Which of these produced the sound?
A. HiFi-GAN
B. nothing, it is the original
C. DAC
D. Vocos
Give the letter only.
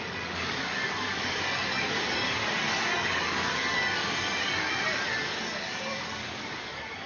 C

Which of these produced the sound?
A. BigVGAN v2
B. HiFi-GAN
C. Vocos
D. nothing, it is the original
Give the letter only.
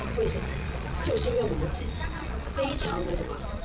C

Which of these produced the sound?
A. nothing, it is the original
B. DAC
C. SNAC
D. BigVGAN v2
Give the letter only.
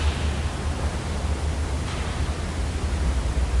A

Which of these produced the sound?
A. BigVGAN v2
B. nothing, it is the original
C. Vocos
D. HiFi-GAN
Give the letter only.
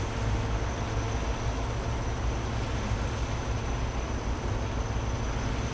B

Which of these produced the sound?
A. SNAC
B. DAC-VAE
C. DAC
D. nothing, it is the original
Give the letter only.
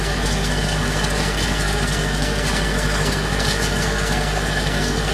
A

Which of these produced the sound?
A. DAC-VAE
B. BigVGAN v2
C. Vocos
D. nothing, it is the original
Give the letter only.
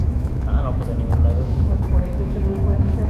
A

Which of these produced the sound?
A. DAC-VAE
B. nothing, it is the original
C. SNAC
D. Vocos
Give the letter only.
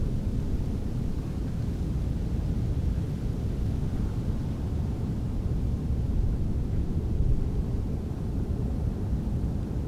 B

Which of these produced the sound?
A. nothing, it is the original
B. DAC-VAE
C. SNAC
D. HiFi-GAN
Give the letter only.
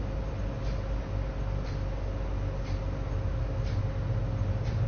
A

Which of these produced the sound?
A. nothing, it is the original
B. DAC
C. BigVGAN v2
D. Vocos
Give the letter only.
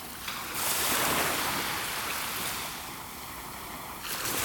A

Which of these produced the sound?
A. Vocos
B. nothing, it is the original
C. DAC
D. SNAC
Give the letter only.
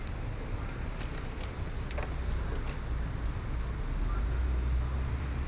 B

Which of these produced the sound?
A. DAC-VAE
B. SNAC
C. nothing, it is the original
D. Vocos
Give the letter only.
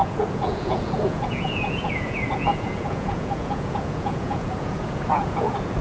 D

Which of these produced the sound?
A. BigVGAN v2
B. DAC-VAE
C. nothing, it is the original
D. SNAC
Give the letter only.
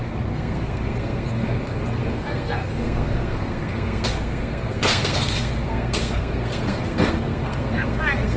D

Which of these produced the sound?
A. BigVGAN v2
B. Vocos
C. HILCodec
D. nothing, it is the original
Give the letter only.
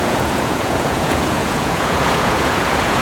B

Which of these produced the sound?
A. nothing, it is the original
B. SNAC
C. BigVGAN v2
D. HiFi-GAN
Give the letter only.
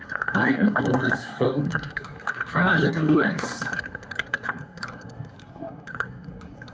B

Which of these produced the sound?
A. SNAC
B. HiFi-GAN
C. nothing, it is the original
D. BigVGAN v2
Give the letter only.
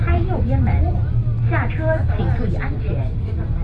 C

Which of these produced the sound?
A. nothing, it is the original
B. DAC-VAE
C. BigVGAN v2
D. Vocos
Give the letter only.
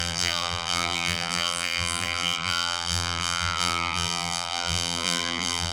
C